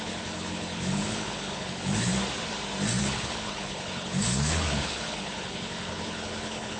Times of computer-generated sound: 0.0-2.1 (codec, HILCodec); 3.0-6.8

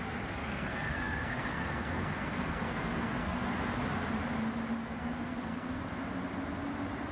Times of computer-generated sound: 0.4-3.7 (codec, SNAC); 4.8-5.8

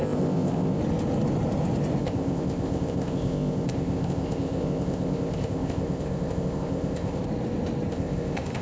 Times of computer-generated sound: 0.0-0.8 (codec, ZipCodec); 2.0-7.2; 7.9-8.6